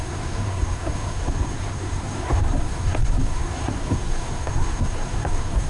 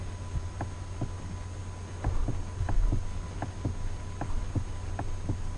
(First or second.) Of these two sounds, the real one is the second